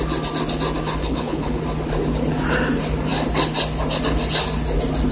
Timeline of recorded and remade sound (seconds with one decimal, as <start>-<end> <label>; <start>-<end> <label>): 0.0-1.0 recorded; 1.0-1.6 remade; 1.6-5.1 recorded